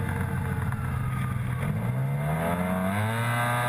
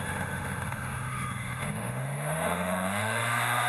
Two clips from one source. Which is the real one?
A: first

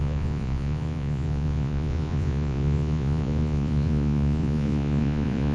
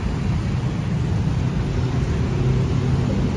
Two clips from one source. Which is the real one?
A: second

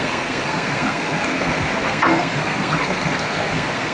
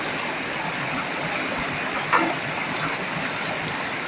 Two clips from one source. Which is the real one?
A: second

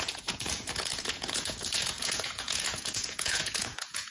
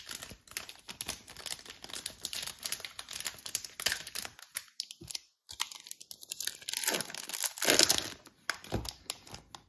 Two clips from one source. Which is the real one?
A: second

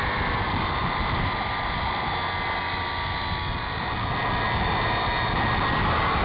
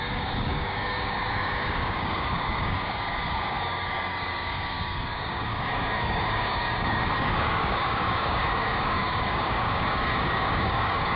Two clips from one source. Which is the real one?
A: first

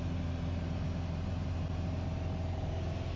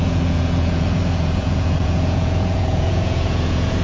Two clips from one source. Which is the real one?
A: first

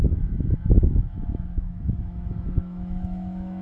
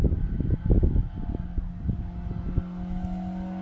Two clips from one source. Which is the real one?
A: second